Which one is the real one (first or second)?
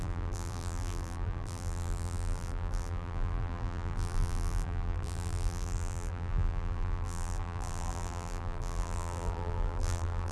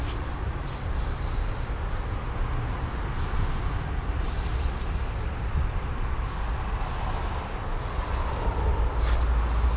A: second